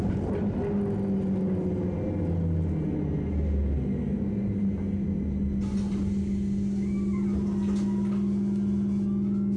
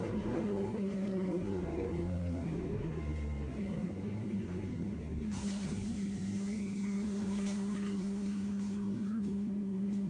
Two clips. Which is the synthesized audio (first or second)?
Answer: second